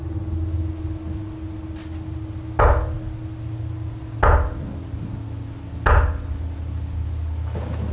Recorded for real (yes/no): yes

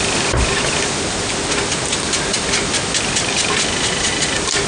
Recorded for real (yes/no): yes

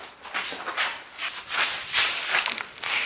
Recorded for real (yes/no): yes